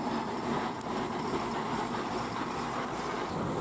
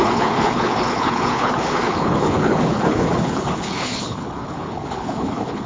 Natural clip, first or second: first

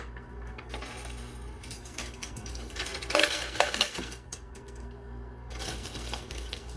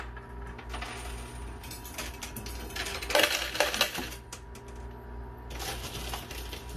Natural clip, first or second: second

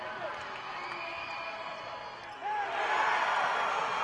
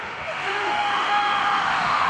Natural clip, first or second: first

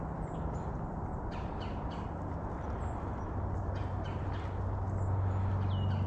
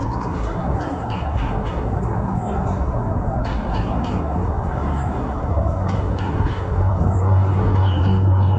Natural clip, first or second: first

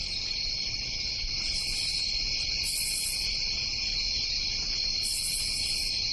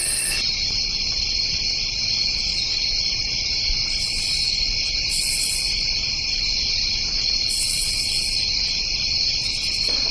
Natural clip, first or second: first